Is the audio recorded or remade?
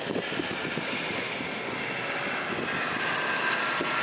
recorded